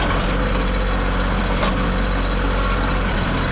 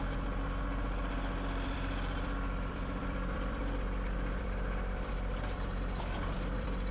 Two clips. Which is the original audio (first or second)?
first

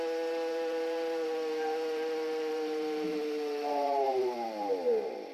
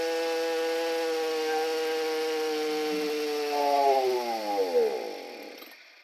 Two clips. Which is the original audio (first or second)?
second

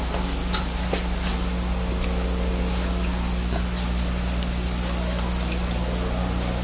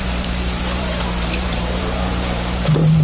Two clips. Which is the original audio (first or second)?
first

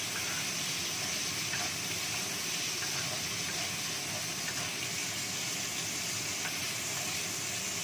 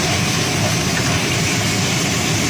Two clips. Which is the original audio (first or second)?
first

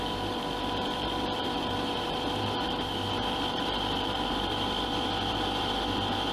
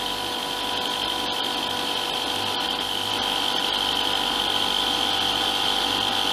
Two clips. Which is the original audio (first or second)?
second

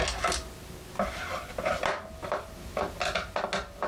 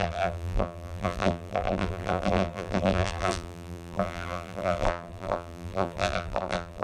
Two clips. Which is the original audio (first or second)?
first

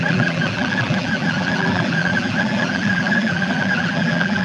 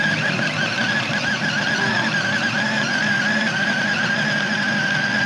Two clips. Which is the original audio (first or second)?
second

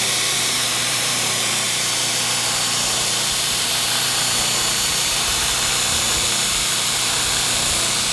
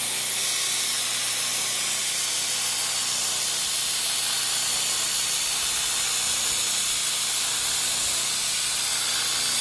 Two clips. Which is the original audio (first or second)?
second